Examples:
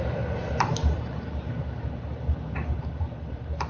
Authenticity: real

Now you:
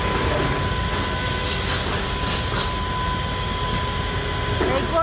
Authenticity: real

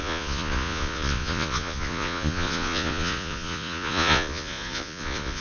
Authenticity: fake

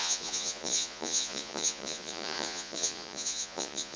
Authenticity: fake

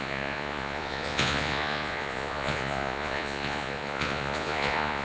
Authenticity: fake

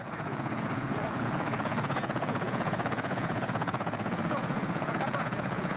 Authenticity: fake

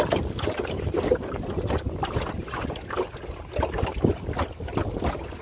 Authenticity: real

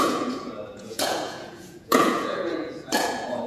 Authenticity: fake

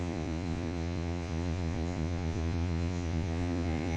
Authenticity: fake